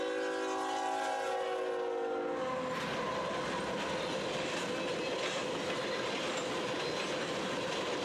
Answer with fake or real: real